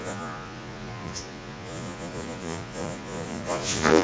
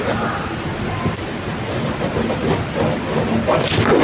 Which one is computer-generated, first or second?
first